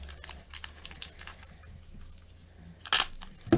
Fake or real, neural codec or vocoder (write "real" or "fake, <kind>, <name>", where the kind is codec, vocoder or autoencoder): real